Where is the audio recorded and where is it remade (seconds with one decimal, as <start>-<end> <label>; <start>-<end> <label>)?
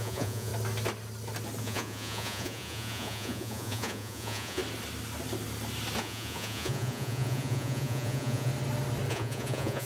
0.0-0.5 remade; 0.5-1.6 recorded; 1.6-4.6 remade; 4.6-6.0 recorded; 6.0-8.5 remade; 8.5-9.1 recorded; 9.1-9.9 remade